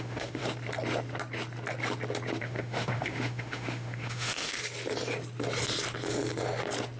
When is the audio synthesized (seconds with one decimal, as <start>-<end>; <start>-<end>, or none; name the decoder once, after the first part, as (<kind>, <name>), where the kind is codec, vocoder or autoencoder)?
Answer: 0.0-0.4 (autoencoder, DAC-VAE); 2.4-4.6